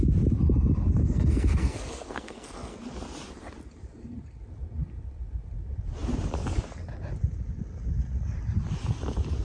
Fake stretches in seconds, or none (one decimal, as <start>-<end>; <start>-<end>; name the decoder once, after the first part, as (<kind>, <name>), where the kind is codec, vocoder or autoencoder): 1.0-2.8 (codec, SNAC)

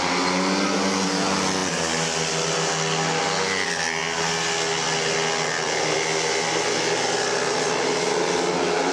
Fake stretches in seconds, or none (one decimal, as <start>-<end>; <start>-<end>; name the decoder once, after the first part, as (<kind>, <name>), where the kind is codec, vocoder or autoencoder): none

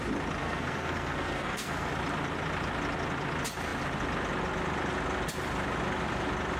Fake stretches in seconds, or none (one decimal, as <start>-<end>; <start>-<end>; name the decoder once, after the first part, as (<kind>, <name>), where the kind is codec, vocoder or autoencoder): 0.4-1.9 (codec, SNAC)

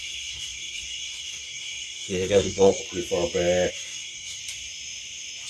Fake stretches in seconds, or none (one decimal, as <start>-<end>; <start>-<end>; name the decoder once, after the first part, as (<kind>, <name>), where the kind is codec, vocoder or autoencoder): 0.0-2.8 (codec, SNAC); 3.7-4.4

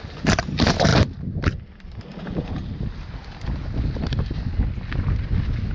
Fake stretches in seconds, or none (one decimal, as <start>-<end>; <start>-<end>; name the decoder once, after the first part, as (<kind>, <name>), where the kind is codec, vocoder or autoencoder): none

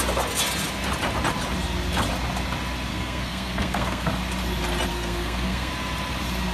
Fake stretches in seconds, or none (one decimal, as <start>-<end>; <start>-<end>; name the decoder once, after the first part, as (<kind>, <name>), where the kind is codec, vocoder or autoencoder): 2.9-4.1 (codec, SNAC); 4.9-5.7

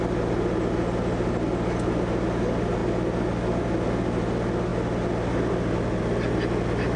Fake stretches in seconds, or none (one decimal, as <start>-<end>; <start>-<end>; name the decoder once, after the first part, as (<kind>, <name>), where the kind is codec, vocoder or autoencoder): none